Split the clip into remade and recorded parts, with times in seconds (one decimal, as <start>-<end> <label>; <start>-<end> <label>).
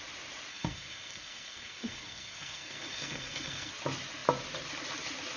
0.0-0.5 recorded; 0.5-3.7 remade; 3.7-5.4 recorded